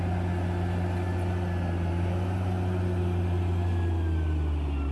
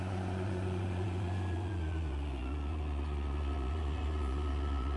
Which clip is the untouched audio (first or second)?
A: first